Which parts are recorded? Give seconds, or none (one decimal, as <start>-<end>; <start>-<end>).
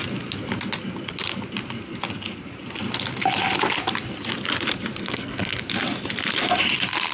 0.0-5.0; 5.6-7.1